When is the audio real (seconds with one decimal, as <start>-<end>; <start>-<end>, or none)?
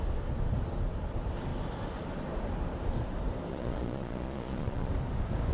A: 0.0-3.5; 4.9-5.5